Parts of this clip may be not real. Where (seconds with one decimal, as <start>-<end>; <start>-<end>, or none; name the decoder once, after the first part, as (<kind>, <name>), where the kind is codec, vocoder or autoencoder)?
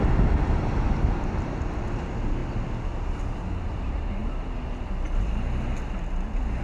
none